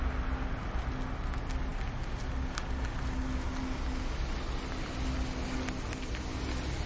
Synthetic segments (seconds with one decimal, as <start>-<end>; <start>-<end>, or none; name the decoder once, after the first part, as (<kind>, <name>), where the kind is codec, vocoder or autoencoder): none